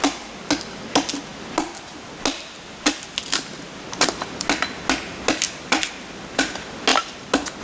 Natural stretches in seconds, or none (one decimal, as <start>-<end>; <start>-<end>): 0.0-7.6